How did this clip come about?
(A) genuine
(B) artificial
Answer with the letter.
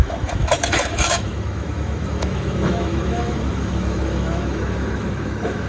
B